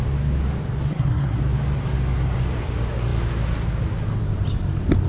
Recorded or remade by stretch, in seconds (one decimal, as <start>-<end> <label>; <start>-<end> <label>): 0.0-0.9 recorded; 0.9-1.4 remade; 1.4-5.1 recorded